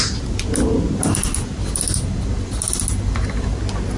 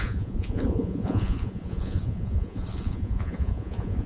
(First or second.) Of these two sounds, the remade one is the second